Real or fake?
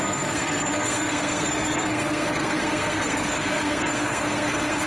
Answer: fake